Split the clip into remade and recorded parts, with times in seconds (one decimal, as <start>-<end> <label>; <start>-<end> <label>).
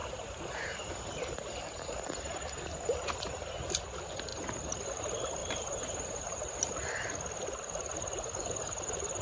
0.0-0.7 remade; 0.7-4.3 recorded; 4.3-5.0 remade; 5.0-5.4 recorded; 5.4-6.6 remade; 6.6-9.2 recorded